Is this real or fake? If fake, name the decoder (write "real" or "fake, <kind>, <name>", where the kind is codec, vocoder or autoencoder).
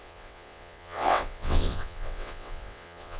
fake, vocoder, WaveNeXt